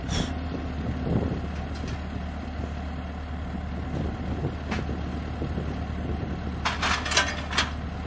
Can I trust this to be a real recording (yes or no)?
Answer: yes